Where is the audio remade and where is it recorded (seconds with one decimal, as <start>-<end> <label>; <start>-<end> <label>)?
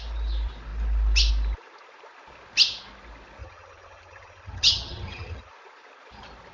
0.0-3.4 recorded; 3.4-5.5 remade; 5.5-6.5 recorded